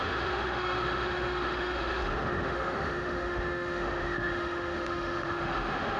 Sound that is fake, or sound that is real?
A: fake